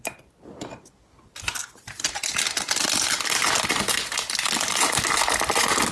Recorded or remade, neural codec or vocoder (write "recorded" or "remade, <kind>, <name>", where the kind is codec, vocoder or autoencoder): recorded